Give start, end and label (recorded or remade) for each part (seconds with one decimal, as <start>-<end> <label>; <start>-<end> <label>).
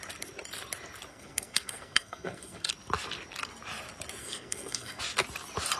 0.0-1.1 recorded; 1.1-2.7 remade; 2.7-4.2 recorded; 4.2-5.0 remade; 5.0-5.8 recorded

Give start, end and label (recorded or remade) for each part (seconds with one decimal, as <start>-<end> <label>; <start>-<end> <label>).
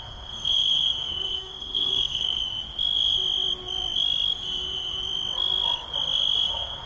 0.0-2.4 remade; 2.4-6.5 recorded; 6.5-6.9 remade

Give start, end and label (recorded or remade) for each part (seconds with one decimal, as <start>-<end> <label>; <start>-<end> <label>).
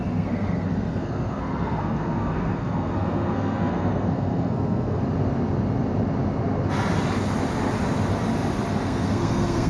0.0-5.0 remade; 5.0-8.8 recorded; 8.8-9.7 remade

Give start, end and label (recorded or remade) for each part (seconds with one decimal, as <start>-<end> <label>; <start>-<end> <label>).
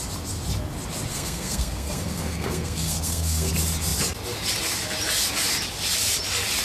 0.0-1.1 recorded; 1.1-3.5 remade; 3.5-6.6 recorded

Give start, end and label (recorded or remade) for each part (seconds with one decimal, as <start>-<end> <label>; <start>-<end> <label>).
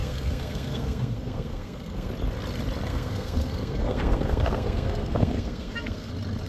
0.0-2.1 remade; 2.1-2.9 recorded; 2.9-6.1 remade; 6.1-6.5 recorded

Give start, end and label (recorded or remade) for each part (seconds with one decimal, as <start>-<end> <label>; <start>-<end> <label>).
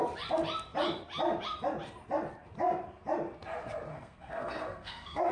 0.0-3.9 recorded; 3.9-5.3 remade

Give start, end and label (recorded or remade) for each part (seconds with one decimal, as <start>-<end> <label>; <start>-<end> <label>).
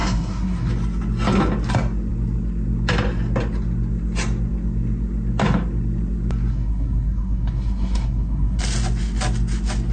0.0-0.7 remade; 0.7-6.5 recorded; 6.5-8.6 remade; 8.6-9.9 recorded